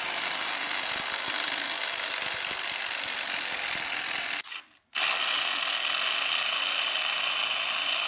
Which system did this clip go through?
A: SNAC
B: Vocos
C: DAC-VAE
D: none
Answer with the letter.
D